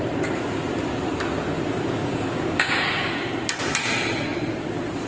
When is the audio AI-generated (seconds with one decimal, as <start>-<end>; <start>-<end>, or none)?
2.0-3.3